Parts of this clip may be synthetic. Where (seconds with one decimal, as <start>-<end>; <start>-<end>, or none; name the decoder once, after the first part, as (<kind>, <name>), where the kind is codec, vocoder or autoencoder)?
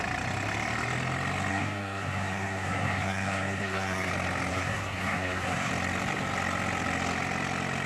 1.5-4.1 (codec, SNAC); 4.5-5.7